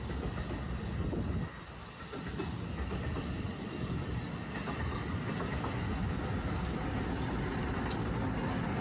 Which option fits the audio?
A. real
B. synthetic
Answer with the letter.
A